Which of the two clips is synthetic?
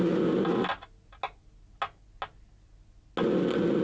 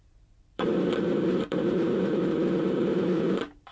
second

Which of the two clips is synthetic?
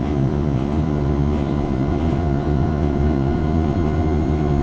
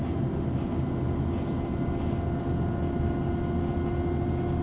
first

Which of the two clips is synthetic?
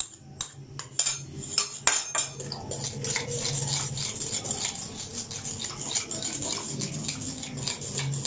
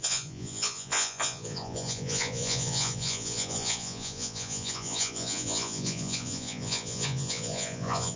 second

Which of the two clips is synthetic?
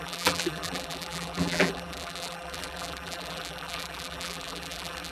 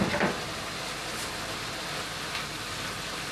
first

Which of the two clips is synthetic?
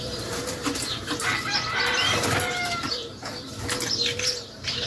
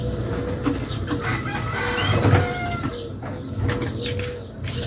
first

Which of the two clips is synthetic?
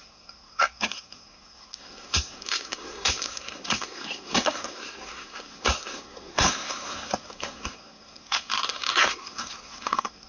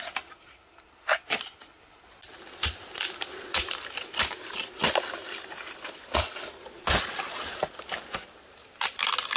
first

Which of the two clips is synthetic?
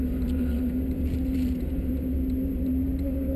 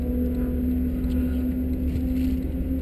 first